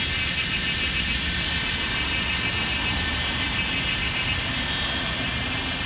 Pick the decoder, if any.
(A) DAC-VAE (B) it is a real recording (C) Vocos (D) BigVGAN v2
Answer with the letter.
B